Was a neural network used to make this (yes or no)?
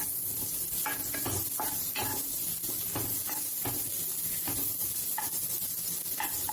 no